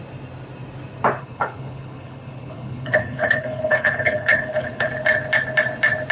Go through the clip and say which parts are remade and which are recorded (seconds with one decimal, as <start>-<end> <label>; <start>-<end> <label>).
0.0-1.2 recorded; 1.2-4.9 remade; 4.9-6.1 recorded